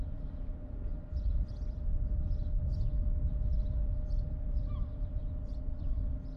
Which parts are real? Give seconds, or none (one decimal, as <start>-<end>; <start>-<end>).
none